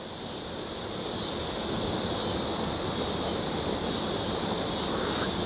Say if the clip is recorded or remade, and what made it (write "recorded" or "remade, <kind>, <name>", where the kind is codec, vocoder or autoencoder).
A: recorded